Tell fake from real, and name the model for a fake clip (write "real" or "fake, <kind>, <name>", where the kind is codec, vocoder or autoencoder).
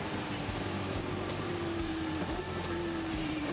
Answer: fake, vocoder, BigVGAN v2